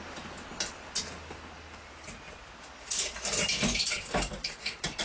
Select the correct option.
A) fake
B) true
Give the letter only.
B